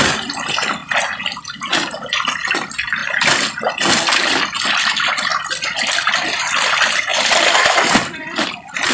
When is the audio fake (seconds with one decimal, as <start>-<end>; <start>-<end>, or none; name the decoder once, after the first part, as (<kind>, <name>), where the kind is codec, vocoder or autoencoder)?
none